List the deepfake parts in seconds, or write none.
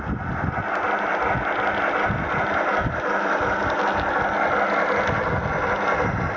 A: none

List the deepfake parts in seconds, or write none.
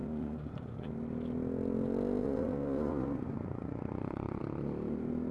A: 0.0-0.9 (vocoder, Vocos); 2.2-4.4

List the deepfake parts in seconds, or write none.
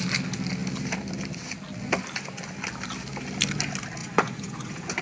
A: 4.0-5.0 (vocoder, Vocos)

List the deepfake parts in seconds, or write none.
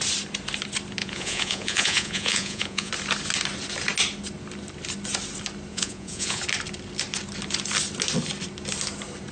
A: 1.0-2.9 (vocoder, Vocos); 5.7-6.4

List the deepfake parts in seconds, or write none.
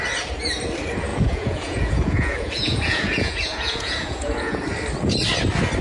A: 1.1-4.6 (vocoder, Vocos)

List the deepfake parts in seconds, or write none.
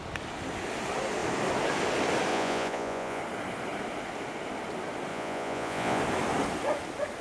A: 2.3-3.2 (vocoder, Vocos); 5.1-6.0